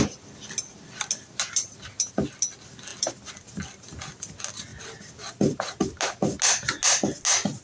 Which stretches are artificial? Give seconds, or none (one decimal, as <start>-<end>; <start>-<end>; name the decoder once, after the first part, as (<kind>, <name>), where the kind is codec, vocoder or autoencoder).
none